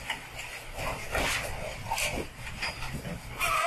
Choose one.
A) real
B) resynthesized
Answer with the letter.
A